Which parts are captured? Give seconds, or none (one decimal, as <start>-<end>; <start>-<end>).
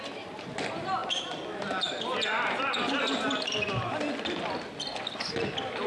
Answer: 0.0-5.9